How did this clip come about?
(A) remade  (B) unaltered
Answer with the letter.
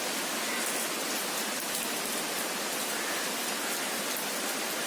B